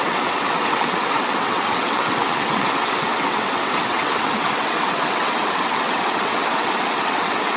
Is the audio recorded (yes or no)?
no